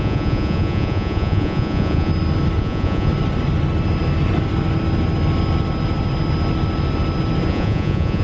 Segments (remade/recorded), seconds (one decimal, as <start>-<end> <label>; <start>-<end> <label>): 0.0-2.1 remade; 2.1-2.6 recorded; 2.6-3.1 remade; 3.1-7.5 recorded; 7.5-8.2 remade